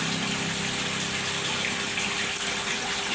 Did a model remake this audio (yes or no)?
no